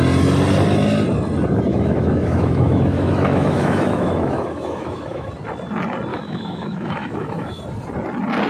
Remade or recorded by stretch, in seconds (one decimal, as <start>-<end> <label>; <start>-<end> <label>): 0.0-1.7 recorded; 1.7-5.3 remade; 5.3-6.1 recorded; 6.1-7.6 remade; 7.6-8.5 recorded